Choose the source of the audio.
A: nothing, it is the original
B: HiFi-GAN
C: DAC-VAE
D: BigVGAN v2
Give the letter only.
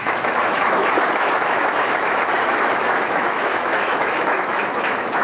C